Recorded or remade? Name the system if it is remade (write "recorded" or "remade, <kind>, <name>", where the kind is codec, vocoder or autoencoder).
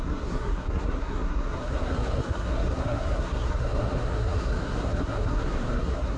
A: remade, codec, SNAC